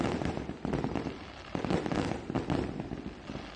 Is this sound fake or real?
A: real